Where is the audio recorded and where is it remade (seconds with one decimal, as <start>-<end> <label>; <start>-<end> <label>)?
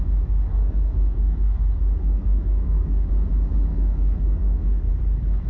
0.0-0.5 recorded; 0.5-1.6 remade; 1.6-2.0 recorded; 2.0-3.1 remade; 3.1-3.7 recorded; 3.7-4.9 remade; 4.9-5.5 recorded